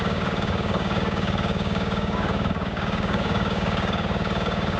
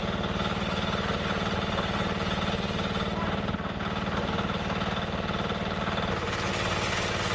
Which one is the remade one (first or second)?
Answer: first